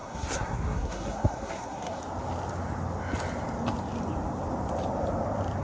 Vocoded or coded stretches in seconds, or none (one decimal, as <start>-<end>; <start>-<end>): 0.0-2.0